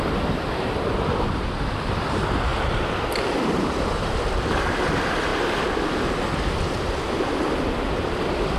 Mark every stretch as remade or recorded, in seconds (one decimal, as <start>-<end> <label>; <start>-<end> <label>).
0.0-2.5 remade; 2.5-3.2 recorded; 3.2-5.3 remade; 5.3-6.3 recorded; 6.3-8.6 remade